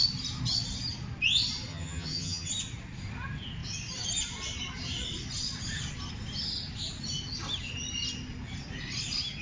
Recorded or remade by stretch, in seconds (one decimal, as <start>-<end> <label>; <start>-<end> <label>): 0.0-1.7 recorded; 1.7-2.5 remade; 2.5-9.4 recorded